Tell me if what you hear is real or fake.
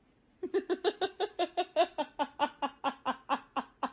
real